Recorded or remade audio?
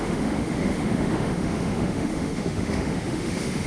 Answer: remade